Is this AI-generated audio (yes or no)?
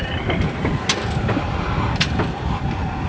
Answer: no